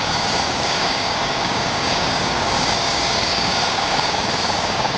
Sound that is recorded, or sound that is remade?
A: remade